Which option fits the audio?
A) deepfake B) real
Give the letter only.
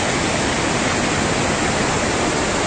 B